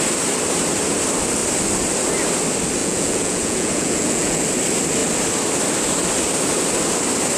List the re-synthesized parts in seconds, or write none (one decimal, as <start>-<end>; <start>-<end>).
2.8-4.4